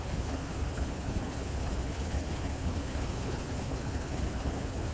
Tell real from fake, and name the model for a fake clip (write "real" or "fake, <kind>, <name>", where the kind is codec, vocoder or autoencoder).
fake, codec, HILCodec